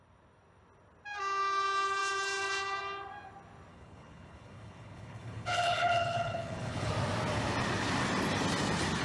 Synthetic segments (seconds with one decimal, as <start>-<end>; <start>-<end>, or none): 3.7-6.9

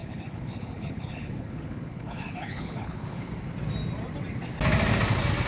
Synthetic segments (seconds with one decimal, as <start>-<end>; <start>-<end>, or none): 0.0-3.3

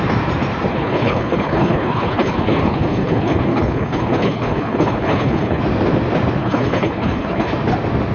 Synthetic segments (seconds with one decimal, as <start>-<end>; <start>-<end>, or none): 0.7-5.6; 6.4-7.5

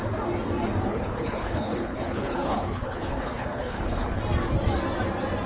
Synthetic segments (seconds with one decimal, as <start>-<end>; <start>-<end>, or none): 0.9-4.2

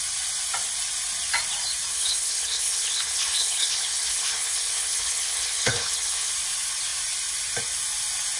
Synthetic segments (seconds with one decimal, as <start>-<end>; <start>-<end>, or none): 1.9-6.3

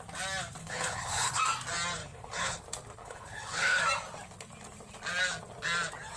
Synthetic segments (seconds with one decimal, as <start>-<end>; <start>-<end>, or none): 0.6-1.4; 2.0-2.6; 3.0-3.8

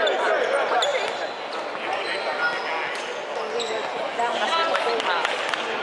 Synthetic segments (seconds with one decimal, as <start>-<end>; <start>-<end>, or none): none